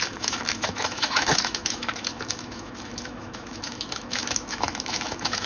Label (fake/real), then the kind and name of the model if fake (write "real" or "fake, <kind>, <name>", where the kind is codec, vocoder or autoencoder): fake, autoencoder, DAC-VAE